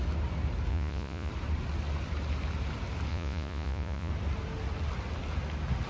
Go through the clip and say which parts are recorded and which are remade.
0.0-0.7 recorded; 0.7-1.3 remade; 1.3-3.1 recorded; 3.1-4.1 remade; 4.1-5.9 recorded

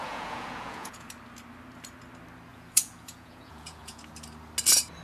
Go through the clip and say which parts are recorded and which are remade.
0.0-1.1 remade; 1.1-2.5 recorded; 2.5-4.0 remade; 4.0-5.0 recorded

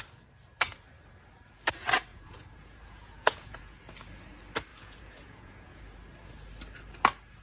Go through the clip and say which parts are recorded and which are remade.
0.0-2.1 recorded; 2.1-3.8 remade; 3.8-4.7 recorded; 4.7-5.8 remade; 5.8-7.4 recorded